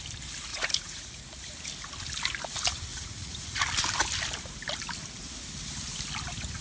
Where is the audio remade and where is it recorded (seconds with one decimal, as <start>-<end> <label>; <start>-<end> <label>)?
0.0-0.5 recorded; 0.5-1.2 remade; 1.2-2.9 recorded; 2.9-3.6 remade; 3.6-6.6 recorded